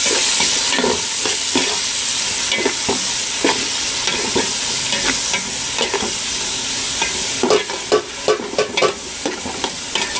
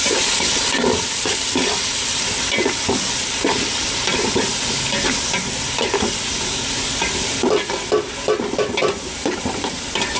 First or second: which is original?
first